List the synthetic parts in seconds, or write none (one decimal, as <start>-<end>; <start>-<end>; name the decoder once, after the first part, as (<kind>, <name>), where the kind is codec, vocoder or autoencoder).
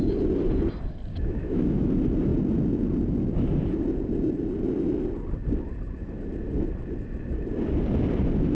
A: 1.1-1.9 (autoencoder, DAC-VAE)